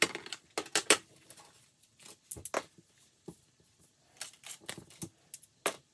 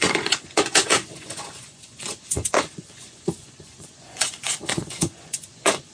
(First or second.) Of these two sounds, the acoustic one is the first